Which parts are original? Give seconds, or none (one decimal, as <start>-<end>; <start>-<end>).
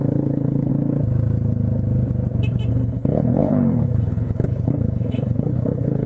0.7-2.7